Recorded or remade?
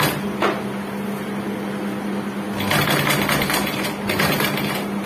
recorded